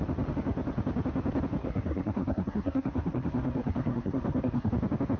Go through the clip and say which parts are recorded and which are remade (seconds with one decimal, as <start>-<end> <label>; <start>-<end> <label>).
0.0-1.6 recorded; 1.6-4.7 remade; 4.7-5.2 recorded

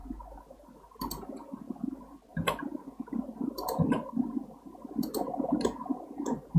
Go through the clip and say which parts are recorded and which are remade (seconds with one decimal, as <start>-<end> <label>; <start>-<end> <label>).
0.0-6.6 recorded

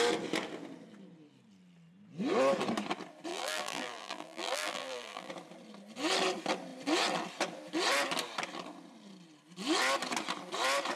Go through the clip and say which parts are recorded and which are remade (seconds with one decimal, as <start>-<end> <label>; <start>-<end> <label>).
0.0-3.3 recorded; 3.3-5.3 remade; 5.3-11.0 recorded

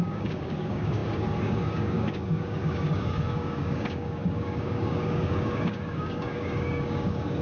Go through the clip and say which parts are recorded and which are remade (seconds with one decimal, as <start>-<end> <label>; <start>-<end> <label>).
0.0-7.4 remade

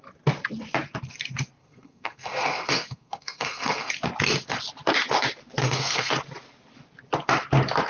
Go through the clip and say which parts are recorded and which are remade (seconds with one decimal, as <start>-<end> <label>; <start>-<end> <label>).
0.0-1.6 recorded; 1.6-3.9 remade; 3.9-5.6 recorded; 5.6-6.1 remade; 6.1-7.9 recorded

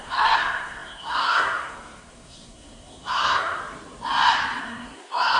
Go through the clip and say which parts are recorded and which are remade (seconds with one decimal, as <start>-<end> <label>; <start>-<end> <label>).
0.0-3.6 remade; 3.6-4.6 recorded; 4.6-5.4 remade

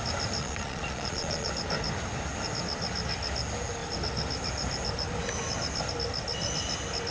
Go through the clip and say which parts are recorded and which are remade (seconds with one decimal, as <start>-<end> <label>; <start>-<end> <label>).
0.0-0.4 recorded; 0.4-1.5 remade; 1.5-7.1 recorded

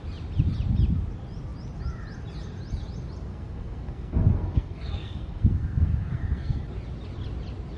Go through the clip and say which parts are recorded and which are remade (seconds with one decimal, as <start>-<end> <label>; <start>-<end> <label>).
0.0-3.3 recorded; 3.3-6.6 remade; 6.6-7.8 recorded